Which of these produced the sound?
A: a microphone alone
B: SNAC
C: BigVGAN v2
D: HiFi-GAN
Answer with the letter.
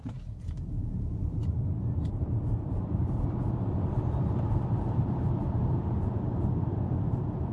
C